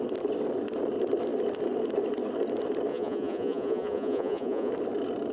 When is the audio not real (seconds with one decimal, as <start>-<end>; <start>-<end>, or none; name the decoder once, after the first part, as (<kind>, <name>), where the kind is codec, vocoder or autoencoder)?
2.9-4.7 (vocoder, Vocos)